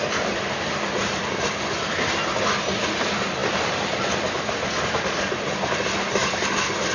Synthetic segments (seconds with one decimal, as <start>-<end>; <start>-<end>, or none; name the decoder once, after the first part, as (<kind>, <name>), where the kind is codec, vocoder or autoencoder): none